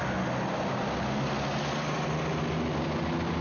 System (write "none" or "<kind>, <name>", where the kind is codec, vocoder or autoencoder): none